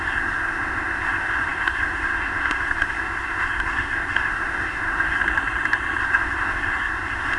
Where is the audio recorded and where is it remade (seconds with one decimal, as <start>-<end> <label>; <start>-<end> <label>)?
0.0-5.2 remade; 5.2-6.0 recorded; 6.0-7.4 remade